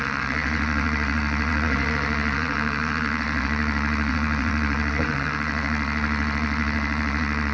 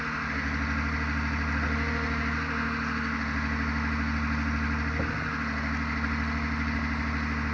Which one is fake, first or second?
first